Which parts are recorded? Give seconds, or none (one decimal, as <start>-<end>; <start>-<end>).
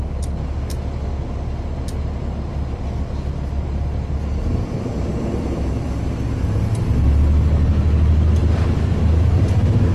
0.0-8.4; 9.0-9.9